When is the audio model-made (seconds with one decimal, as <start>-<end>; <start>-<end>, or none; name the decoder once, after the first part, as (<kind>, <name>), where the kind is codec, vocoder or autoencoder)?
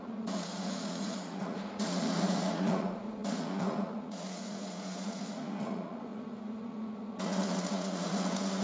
0.0-8.6 (vocoder, Vocos)